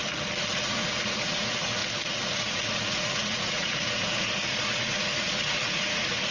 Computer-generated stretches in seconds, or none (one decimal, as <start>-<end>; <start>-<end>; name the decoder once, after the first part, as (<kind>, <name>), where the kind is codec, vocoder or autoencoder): 0.5-6.3 (vocoder, Vocos)